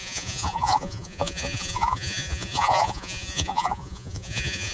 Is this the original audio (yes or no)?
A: no